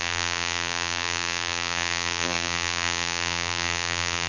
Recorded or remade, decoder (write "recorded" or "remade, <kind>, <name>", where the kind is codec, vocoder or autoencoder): remade, vocoder, BigVGAN v2